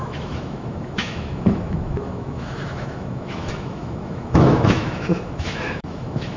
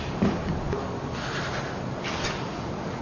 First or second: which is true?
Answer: second